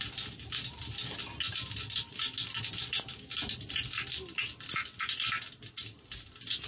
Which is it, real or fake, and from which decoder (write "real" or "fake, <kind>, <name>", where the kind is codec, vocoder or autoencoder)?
real